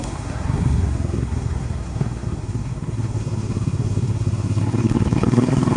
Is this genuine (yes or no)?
no